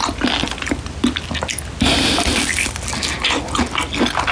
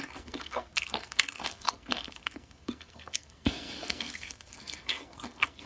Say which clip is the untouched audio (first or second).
first